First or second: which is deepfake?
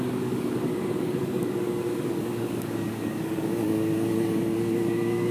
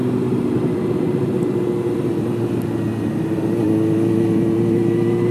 first